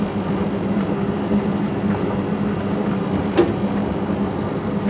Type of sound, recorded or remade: recorded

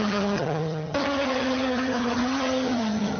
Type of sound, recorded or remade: remade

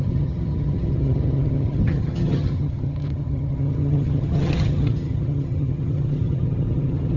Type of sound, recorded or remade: remade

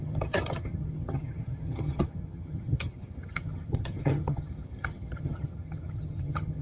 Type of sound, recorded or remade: remade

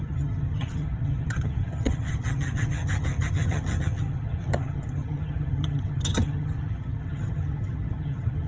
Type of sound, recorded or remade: remade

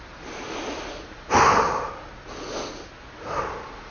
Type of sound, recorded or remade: recorded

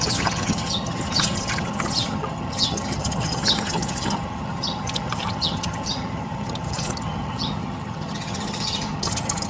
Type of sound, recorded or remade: remade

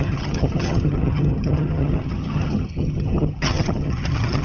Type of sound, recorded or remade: remade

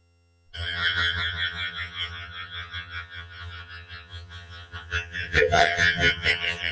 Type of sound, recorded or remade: remade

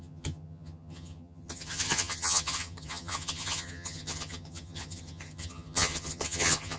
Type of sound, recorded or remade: remade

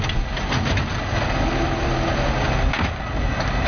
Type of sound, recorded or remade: recorded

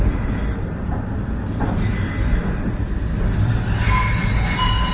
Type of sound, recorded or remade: recorded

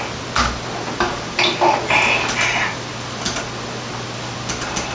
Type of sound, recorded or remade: recorded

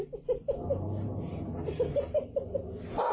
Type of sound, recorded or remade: recorded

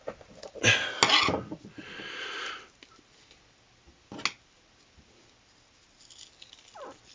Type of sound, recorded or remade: recorded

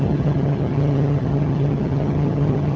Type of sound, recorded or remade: remade